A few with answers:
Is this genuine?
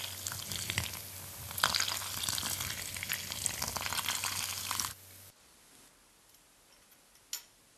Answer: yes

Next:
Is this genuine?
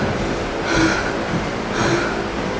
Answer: yes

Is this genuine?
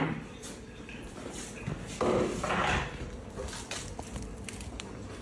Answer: yes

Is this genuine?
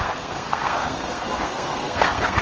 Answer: no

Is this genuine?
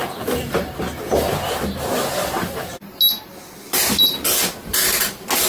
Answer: yes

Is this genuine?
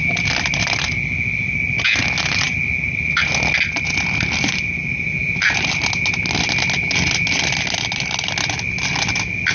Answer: yes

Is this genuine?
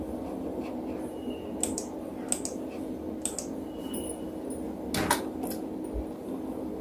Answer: yes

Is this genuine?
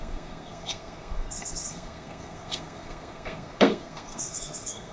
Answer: no